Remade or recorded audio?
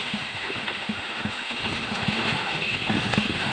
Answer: remade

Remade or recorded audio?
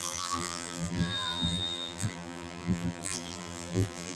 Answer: remade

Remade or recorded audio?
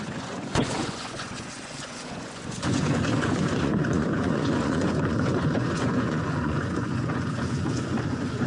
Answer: remade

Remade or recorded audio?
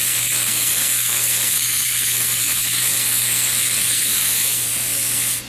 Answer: remade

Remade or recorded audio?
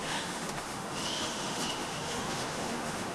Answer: remade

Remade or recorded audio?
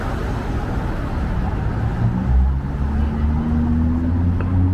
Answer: recorded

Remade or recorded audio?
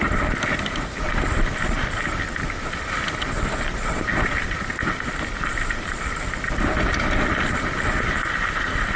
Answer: recorded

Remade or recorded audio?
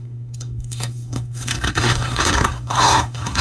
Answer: remade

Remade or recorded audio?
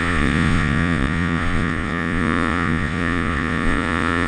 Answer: remade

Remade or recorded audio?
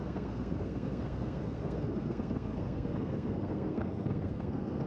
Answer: remade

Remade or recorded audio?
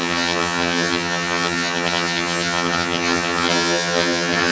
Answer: remade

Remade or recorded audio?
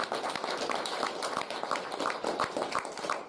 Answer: recorded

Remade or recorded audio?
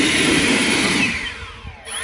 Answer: remade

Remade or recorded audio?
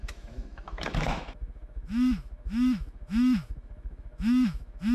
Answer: remade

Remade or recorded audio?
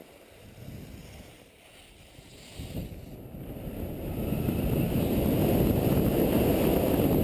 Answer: recorded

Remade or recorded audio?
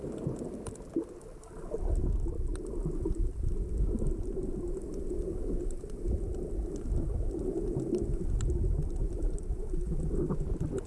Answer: recorded